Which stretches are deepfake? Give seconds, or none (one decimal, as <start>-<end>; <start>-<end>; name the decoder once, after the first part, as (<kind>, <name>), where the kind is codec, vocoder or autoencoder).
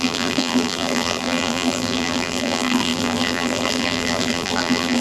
0.0-5.0 (vocoder, BigVGAN v2)